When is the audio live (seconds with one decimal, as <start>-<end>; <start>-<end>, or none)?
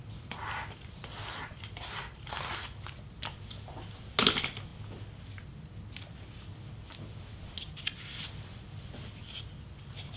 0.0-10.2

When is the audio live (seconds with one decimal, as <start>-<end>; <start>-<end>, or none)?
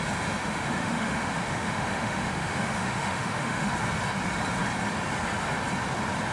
0.0-0.4; 3.7-6.3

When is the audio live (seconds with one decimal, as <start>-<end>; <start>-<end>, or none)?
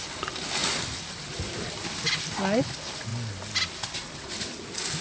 0.0-0.6; 2.3-5.0